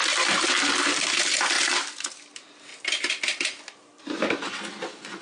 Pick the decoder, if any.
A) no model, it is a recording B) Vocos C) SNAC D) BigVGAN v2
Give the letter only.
A